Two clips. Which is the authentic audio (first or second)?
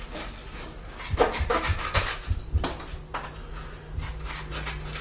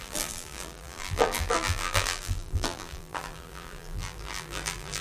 first